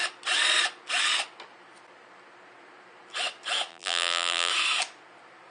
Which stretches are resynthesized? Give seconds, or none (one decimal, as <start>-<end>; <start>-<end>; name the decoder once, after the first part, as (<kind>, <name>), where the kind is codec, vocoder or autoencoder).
3.7-4.5 (vocoder, BigVGAN v2)